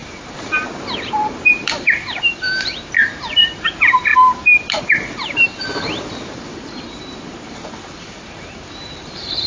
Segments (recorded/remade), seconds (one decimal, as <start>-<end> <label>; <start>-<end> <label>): 0.0-9.5 remade